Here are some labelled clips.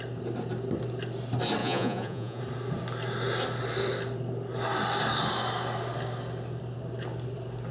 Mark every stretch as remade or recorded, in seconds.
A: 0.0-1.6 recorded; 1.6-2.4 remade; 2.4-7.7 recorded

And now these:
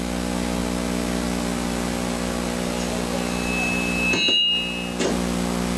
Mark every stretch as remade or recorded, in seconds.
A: 0.0-5.8 recorded